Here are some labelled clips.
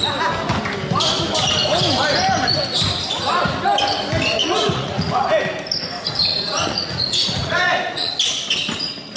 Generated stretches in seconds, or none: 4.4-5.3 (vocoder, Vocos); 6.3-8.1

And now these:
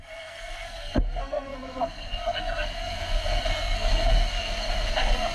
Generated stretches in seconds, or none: 0.0-5.3 (codec, SNAC)

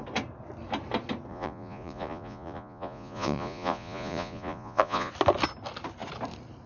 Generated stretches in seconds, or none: 1.3-5.1 (vocoder, Vocos)

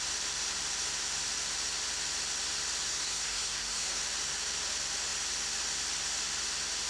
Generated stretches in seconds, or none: 2.9-4.0 (codec, SNAC)

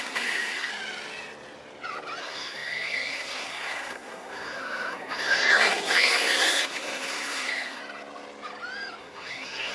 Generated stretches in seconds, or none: 0.0-0.7 (codec, SNAC); 2.2-7.8; 9.0-9.7